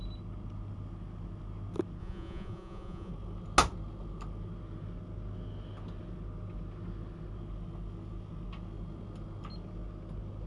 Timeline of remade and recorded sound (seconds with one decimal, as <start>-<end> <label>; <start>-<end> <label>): 0.0-2.0 recorded; 2.0-3.1 remade; 3.1-10.5 recorded